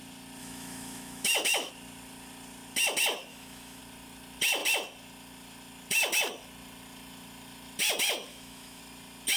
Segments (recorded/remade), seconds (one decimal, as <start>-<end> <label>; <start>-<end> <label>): 0.0-0.4 recorded; 0.4-1.7 remade; 1.7-3.3 recorded; 3.3-3.8 remade; 3.8-8.3 recorded; 8.3-8.8 remade; 8.8-9.4 recorded